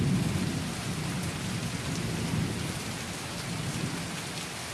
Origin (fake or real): real